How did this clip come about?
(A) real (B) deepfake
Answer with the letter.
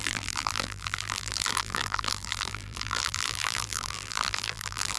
B